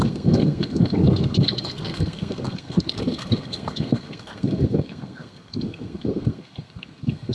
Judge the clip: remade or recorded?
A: remade